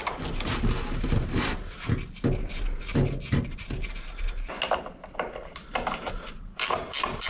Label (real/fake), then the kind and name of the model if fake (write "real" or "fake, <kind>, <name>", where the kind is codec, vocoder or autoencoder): real